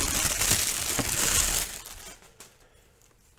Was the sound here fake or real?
real